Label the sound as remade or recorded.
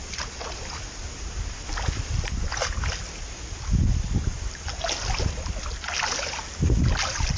recorded